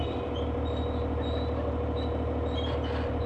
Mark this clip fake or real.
real